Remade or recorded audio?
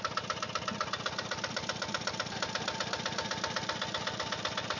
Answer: recorded